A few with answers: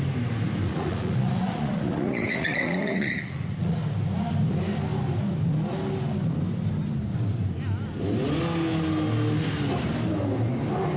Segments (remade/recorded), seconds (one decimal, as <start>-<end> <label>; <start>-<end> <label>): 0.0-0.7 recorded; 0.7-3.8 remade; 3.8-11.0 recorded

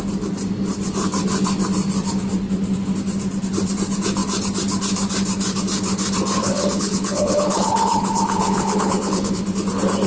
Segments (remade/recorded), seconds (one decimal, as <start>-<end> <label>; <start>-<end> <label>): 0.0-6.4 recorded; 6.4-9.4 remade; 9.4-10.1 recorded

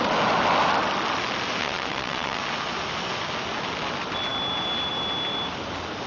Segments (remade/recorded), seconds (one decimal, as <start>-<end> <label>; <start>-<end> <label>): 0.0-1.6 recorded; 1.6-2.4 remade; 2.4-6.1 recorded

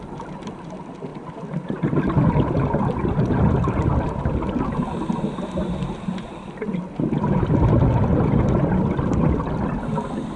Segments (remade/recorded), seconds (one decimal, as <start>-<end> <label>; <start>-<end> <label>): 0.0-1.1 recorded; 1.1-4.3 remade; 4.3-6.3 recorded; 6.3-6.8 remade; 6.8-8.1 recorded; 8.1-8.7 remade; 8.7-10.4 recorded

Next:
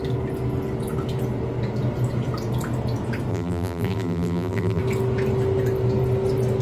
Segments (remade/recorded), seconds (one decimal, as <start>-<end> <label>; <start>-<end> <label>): 0.0-3.3 recorded; 3.3-4.8 remade; 4.8-6.6 recorded

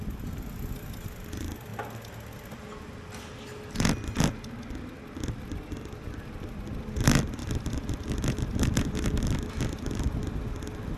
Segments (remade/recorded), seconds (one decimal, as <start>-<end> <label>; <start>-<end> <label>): 0.0-11.0 recorded

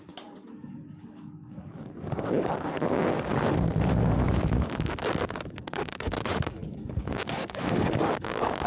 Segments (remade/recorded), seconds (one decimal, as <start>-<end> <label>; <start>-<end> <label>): 0.0-3.3 remade; 3.3-5.2 recorded; 5.2-8.7 remade

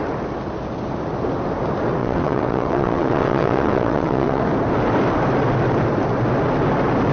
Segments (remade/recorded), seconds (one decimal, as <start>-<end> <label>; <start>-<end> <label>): 0.0-2.0 recorded; 2.0-4.4 remade; 4.4-7.1 recorded